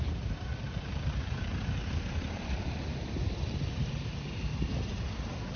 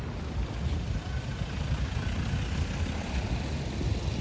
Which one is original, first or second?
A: second